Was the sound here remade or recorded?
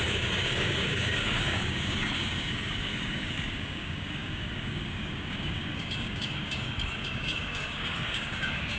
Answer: remade